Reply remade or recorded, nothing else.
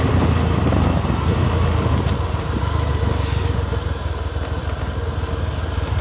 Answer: recorded